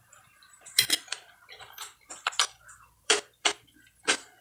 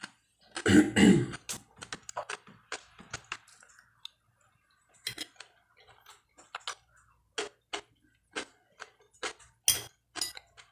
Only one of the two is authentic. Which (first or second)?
second